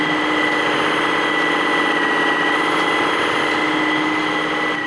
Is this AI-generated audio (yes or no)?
no